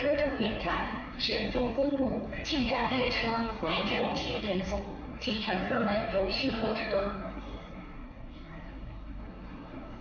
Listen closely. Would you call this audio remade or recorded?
remade